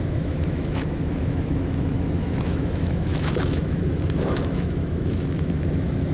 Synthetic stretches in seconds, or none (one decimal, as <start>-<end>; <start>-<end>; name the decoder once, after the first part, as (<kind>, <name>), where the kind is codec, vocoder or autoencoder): 0.0-6.1 (autoencoder, DAC-VAE)